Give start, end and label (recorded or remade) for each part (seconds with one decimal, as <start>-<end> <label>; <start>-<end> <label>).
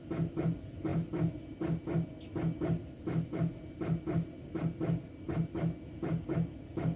0.0-7.0 recorded